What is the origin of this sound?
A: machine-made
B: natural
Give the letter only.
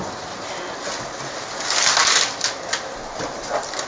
B